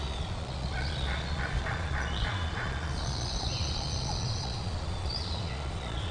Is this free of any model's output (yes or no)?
no